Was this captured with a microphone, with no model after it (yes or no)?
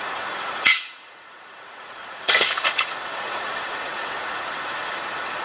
no